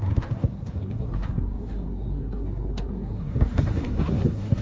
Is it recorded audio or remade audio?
remade